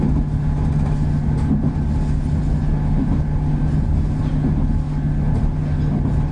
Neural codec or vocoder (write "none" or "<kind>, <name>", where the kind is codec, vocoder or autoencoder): none